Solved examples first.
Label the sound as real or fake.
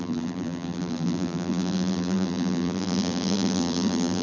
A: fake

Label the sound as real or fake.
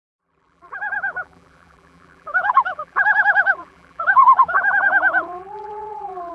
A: fake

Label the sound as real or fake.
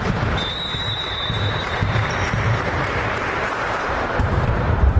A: fake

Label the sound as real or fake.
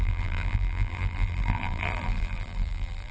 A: fake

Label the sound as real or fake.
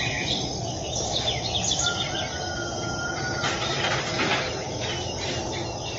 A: real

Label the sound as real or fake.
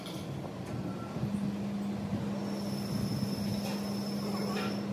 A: real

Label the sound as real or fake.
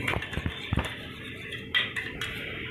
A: real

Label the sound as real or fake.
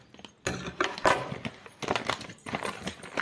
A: fake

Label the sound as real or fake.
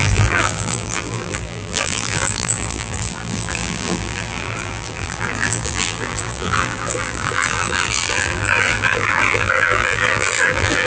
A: fake